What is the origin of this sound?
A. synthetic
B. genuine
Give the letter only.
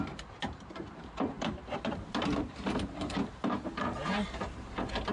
A